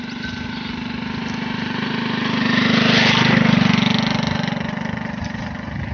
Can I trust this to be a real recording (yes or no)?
yes